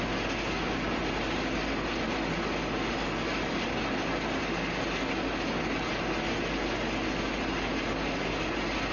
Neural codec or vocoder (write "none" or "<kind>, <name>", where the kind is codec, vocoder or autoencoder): none